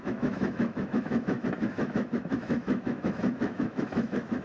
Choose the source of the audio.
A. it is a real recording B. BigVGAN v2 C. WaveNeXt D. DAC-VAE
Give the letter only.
D